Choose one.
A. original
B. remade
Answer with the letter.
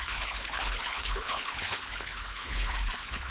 B